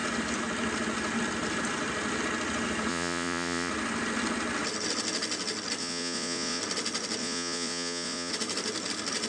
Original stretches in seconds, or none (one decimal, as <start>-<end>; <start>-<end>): 0.0-2.9; 3.7-5.8; 6.6-7.2; 8.3-9.3